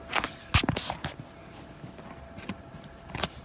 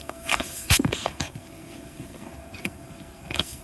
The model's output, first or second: second